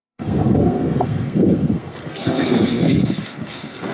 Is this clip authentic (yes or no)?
no